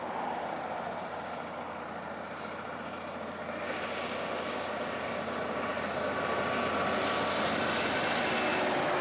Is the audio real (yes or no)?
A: yes